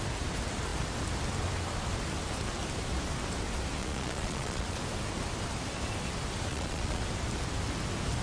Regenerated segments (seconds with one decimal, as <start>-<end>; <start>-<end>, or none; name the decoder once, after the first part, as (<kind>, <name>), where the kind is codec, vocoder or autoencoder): 3.8-4.8 (vocoder, Vocos); 6.5-7.0